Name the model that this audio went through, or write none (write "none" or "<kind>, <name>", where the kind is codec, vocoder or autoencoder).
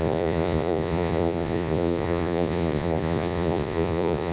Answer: vocoder, Vocos